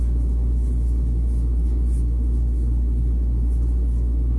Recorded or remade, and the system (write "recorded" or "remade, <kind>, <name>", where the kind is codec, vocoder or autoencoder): recorded